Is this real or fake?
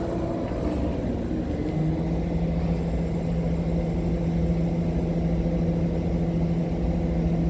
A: real